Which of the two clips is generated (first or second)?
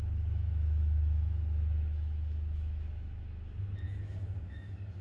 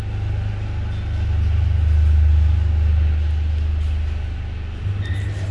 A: first